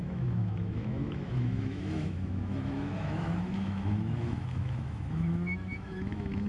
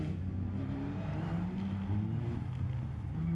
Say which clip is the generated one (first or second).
first